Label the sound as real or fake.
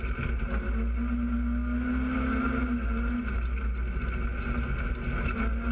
real